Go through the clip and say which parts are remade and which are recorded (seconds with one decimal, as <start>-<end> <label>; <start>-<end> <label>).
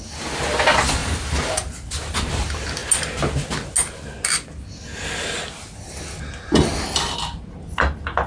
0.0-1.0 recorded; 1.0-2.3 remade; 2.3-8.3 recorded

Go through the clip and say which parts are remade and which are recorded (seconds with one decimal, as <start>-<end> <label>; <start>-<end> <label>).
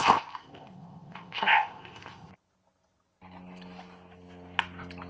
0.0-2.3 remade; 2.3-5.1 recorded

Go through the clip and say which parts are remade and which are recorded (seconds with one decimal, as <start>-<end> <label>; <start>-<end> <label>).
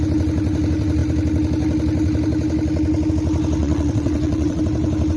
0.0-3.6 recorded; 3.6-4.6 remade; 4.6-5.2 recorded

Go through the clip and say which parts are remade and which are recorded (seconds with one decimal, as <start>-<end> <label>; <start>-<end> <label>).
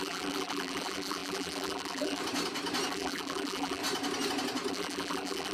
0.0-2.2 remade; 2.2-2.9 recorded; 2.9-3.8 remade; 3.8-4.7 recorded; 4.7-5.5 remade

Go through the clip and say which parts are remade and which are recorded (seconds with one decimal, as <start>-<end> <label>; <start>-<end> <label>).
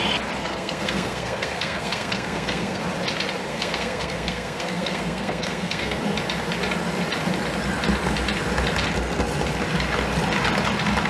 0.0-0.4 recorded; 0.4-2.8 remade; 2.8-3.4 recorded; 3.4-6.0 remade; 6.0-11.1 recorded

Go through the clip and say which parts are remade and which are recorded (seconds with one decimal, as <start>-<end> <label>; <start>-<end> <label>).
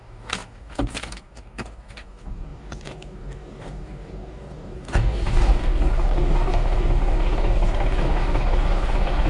0.0-9.3 remade